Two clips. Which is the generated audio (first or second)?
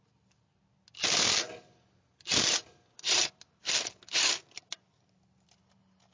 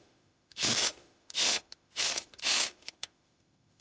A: second